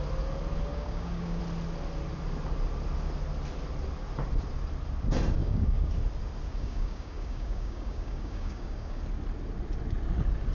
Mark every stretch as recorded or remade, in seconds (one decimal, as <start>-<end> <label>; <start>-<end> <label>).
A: 0.0-0.7 recorded; 0.7-1.4 remade; 1.4-5.4 recorded; 5.4-5.9 remade; 5.9-6.5 recorded; 6.5-9.0 remade; 9.0-10.5 recorded